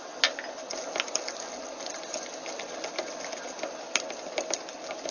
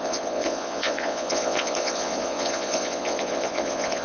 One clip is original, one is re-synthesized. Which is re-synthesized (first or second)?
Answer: second